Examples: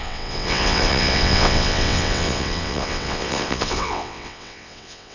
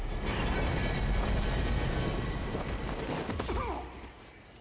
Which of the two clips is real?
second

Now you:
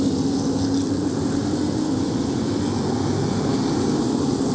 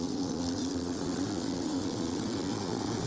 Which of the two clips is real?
first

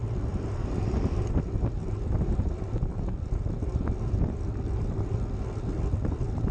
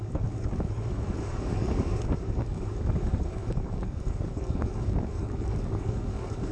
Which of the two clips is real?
first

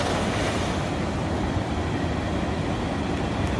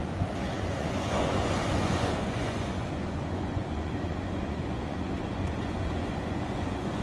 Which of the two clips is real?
first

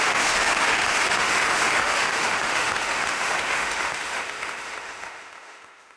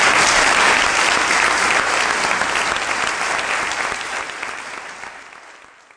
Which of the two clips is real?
second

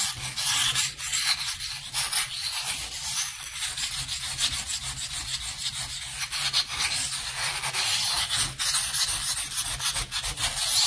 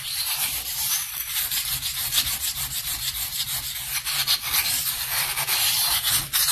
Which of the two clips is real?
first